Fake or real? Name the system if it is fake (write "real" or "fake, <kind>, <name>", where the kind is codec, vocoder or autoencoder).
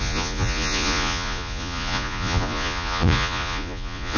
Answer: fake, vocoder, Vocos